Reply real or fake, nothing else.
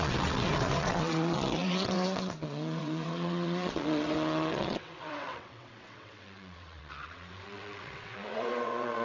fake